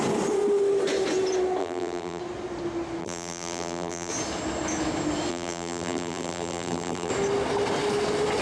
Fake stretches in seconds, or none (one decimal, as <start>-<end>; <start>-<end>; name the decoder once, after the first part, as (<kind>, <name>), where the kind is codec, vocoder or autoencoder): 1.6-2.2 (vocoder, BigVGAN v2); 3.0-4.1; 5.3-7.1